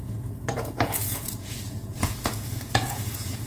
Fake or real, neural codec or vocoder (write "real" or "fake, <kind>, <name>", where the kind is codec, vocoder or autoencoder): fake, vocoder, Vocos